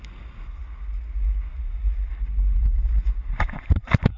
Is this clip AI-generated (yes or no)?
no